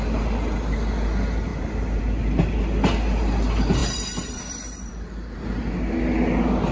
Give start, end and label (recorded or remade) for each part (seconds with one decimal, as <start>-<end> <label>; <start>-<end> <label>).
0.0-3.8 recorded; 3.8-4.9 remade; 4.9-6.7 recorded